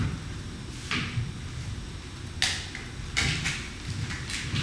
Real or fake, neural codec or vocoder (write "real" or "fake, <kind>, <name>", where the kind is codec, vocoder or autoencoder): real